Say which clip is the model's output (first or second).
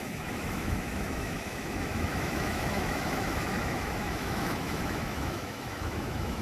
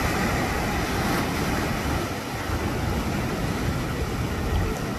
first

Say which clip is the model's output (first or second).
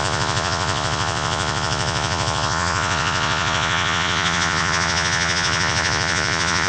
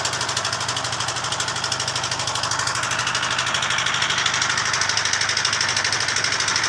first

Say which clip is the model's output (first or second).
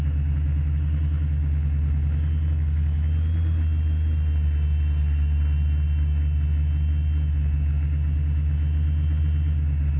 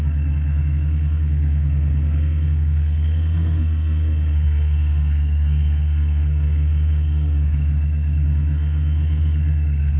second